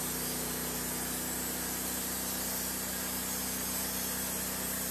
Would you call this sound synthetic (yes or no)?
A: no